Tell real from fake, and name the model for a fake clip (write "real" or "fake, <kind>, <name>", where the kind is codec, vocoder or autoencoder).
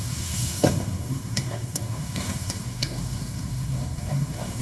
fake, codec, SNAC